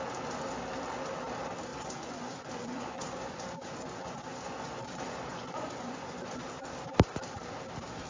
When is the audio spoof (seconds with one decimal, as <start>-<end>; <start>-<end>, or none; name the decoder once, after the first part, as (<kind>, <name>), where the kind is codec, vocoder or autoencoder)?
1.7-6.5 (vocoder, Vocos)